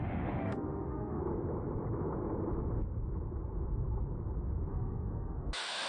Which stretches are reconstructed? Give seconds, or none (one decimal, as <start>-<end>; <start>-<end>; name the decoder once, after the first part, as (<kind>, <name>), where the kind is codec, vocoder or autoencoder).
0.0-1.2 (autoencoder, DAC-VAE); 4.7-5.9